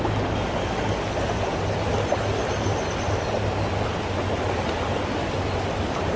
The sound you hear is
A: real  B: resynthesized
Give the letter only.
A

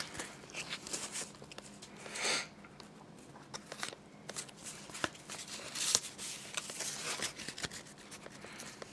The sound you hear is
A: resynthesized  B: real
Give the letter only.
B